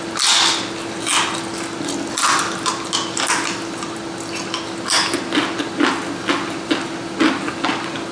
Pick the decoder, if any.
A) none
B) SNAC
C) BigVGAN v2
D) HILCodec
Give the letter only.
A